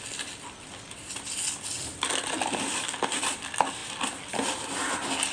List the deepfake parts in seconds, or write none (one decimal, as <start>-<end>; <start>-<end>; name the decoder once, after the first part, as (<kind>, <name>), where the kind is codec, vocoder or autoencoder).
none